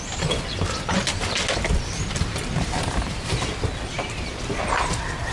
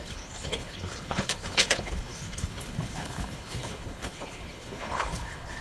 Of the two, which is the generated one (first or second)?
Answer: second